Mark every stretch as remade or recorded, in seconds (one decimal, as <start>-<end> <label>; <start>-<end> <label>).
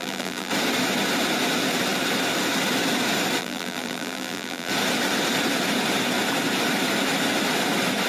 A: 0.0-0.5 remade; 0.5-3.4 recorded; 3.4-4.7 remade; 4.7-8.1 recorded